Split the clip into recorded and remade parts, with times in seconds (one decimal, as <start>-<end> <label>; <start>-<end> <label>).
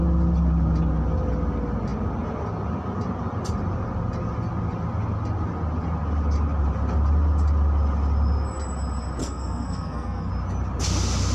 0.0-9.2 recorded; 9.2-10.3 remade; 10.3-11.3 recorded